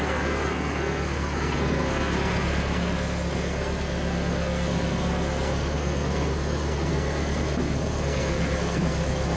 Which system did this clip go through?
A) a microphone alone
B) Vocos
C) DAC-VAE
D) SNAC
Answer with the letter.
D